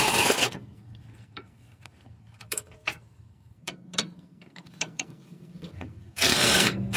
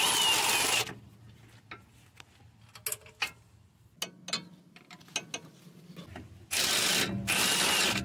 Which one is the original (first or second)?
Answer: second